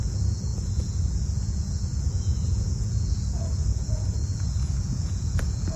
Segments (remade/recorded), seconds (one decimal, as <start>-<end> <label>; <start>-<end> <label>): 0.0-5.8 remade

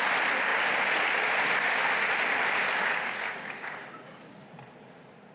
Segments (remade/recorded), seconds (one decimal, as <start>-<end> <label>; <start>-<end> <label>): 0.0-5.3 recorded

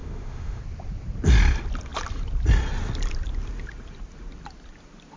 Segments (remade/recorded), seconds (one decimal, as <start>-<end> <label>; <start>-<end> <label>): 0.0-0.6 remade; 0.6-5.2 recorded

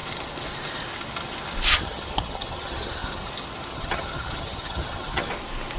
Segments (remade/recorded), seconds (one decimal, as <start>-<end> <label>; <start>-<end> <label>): 0.0-1.7 recorded; 1.7-3.3 remade; 3.3-3.7 recorded; 3.7-5.3 remade; 5.3-5.8 recorded